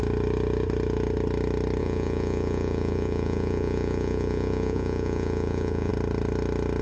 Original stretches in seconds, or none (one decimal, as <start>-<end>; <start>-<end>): 0.0-1.8; 5.9-6.8